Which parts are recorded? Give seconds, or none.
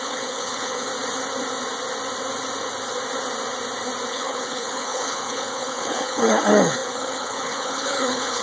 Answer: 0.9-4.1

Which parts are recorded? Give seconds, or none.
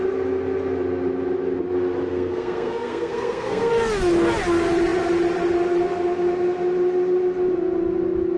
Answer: 0.0-2.1; 3.7-8.4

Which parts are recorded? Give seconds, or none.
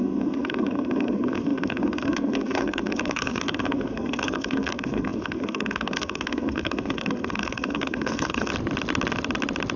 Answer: 8.5-9.8